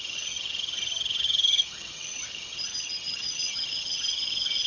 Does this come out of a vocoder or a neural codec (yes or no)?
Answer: yes